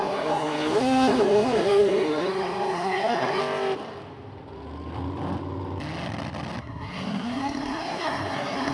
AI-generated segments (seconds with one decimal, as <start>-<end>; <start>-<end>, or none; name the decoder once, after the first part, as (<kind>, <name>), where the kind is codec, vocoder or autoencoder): 0.0-3.4 (codec, SNAC); 6.6-8.7